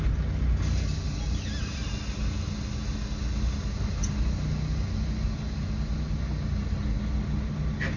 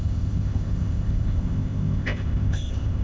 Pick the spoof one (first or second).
second